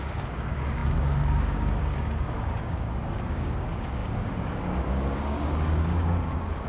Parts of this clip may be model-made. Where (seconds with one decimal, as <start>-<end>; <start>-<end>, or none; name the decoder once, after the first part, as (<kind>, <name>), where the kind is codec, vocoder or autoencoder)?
0.0-6.7 (codec, DAC)